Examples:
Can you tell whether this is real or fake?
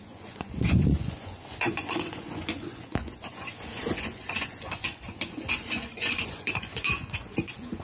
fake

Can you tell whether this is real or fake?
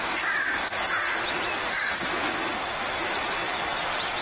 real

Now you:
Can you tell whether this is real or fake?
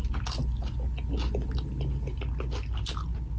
real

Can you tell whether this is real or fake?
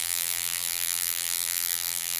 fake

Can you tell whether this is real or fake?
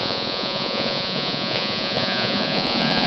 fake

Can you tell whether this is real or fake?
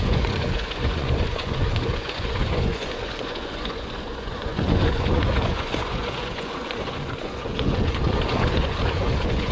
fake